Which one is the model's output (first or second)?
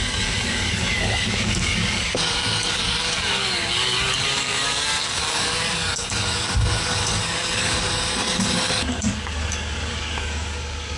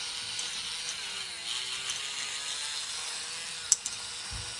first